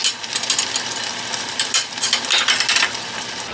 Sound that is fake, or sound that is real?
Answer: real